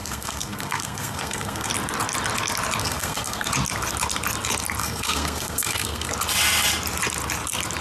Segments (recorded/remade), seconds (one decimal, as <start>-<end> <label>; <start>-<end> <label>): 0.0-1.7 remade; 1.7-2.8 recorded; 2.8-3.5 remade; 3.5-4.8 recorded; 4.8-6.1 remade; 6.1-7.8 recorded